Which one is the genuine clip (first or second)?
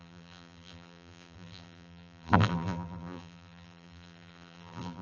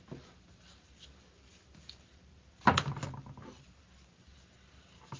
second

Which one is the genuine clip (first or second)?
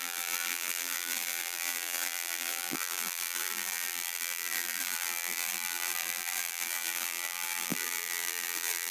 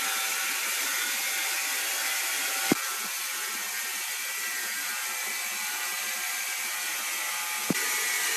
second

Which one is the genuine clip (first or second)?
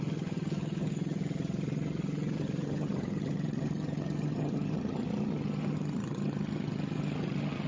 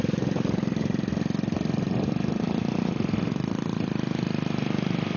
second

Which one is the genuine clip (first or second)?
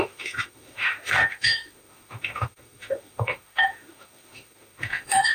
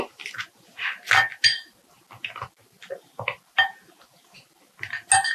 second